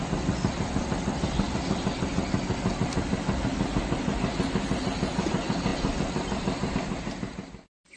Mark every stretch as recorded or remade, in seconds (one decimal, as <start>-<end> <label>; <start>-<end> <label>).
0.0-8.0 recorded